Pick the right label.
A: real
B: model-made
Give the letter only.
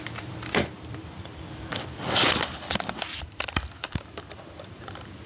B